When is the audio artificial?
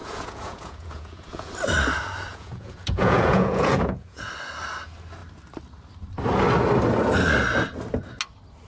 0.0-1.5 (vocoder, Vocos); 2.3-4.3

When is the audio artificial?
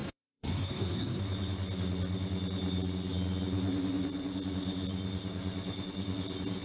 0.0-1.2 (codec, SNAC)